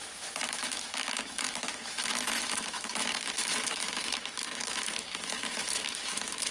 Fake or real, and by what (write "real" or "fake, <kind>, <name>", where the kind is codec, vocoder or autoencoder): fake, autoencoder, DAC-VAE